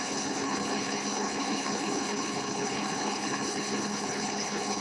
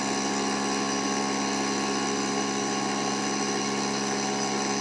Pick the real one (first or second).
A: second